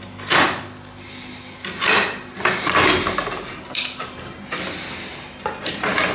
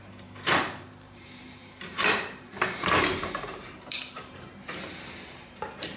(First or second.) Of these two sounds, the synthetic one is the second